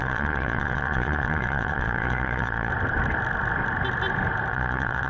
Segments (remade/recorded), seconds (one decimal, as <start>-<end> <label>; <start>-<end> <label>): 0.0-2.7 remade; 2.7-4.5 recorded; 4.5-5.1 remade